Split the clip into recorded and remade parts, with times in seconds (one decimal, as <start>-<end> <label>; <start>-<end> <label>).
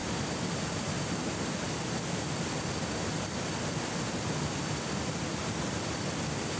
0.0-6.6 recorded